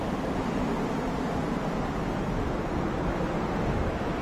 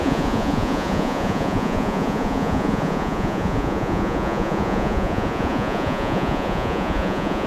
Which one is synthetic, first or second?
second